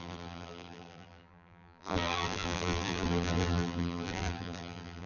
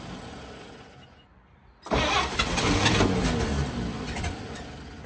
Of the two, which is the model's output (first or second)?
first